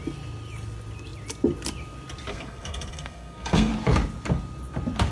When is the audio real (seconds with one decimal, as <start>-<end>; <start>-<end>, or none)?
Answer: 0.0-2.3; 3.7-5.1